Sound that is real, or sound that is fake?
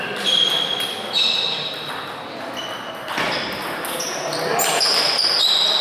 real